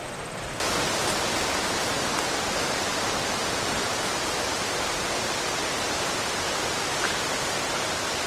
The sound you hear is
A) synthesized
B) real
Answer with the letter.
B